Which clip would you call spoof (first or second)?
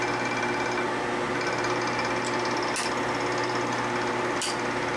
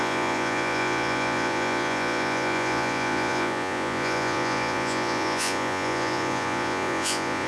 second